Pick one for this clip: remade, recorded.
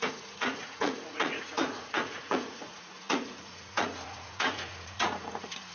remade